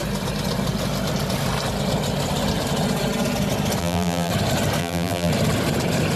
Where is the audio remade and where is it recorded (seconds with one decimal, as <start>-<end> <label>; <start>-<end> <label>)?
0.0-3.8 recorded; 3.8-4.3 remade; 4.3-4.8 recorded; 4.8-5.3 remade; 5.3-6.2 recorded